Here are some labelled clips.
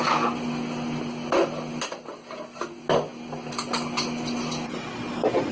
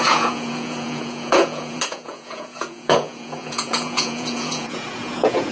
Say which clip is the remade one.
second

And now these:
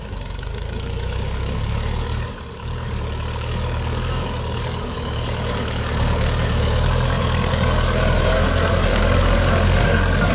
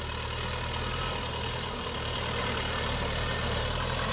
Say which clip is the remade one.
first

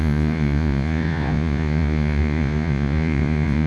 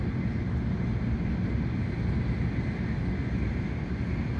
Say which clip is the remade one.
first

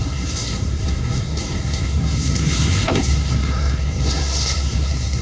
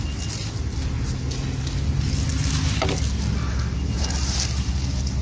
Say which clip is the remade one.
first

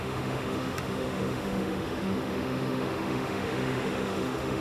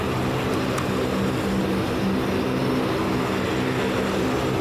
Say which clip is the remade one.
first